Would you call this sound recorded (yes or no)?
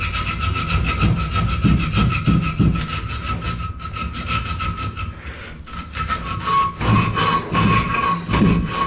yes